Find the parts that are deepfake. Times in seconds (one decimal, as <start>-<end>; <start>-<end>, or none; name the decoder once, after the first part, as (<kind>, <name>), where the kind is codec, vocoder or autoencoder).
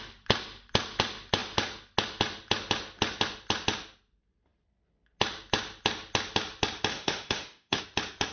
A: 6.9-7.8 (autoencoder, DAC-VAE)